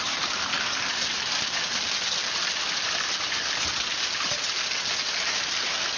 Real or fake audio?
real